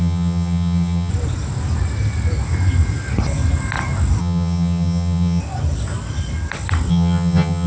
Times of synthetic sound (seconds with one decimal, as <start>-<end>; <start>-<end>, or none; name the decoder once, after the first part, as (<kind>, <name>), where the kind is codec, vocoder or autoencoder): 0.0-1.1 (vocoder, HiFi-GAN); 4.2-5.4; 6.9-7.7